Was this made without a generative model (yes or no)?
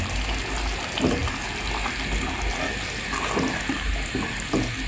yes